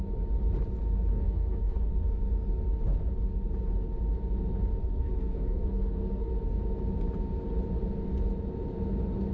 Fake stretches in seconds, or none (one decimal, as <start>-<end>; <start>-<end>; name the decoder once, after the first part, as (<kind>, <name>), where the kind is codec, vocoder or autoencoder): 1.1-1.9 (codec, SNAC); 4.8-6.3